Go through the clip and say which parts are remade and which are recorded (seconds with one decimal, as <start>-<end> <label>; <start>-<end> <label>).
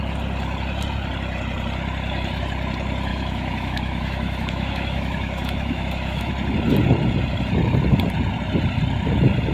0.0-3.1 recorded; 3.1-6.3 remade; 6.3-9.5 recorded